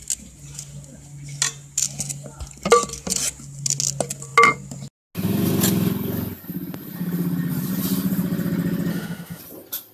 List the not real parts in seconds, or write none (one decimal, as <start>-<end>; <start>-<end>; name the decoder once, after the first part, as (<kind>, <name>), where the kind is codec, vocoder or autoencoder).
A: 8.9-9.4 (autoencoder, DAC-VAE)